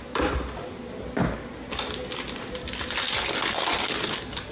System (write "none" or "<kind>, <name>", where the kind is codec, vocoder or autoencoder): none